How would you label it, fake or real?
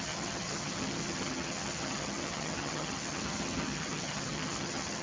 fake